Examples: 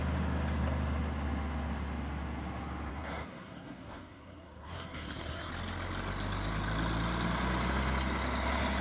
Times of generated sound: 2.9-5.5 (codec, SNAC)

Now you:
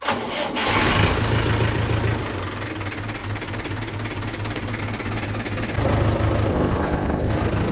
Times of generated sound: 6.5-7.3 (codec, ZipCodec)

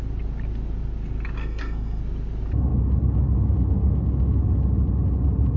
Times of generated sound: 1.4-2.0 (codec, SNAC)

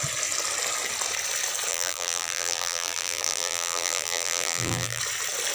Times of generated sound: 1.7-5.0 (vocoder, BigVGAN v2)

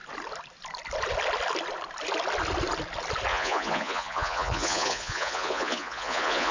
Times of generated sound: 3.3-6.5 (vocoder, Vocos)

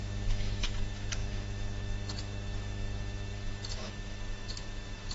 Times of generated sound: 0.0-5.1 (autoencoder, DAC-VAE)

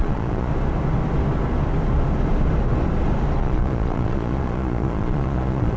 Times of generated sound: 0.0-0.5 (vocoder, Vocos); 3.4-5.8

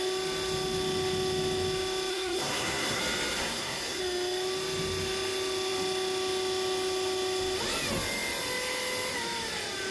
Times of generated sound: 2.1-3.0 (codec, SNAC); 3.4-4.0